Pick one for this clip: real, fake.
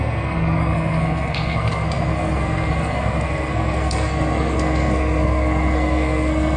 fake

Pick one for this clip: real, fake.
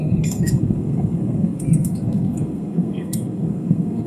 fake